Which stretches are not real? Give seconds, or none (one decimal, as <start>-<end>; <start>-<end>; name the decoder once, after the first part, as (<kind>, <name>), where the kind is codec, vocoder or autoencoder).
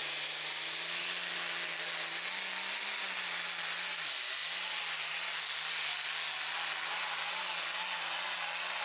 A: none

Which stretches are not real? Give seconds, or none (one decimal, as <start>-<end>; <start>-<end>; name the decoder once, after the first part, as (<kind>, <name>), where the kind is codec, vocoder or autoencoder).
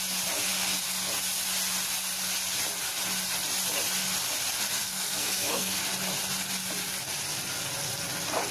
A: 4.8-5.8 (codec, SNAC)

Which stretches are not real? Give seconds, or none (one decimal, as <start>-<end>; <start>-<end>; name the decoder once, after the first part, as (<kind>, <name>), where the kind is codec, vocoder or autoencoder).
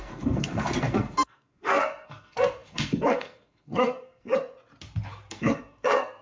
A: 0.0-4.3 (codec, SNAC); 5.3-6.2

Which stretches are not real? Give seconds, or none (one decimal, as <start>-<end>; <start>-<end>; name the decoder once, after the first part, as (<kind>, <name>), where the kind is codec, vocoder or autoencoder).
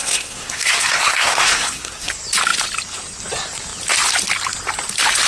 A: 0.0-2.1 (codec, SNAC)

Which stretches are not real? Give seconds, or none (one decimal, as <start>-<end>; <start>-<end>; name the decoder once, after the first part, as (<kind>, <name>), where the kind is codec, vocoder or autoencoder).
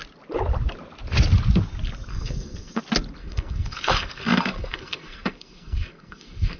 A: 2.1-2.8 (codec, SNAC); 3.2-6.6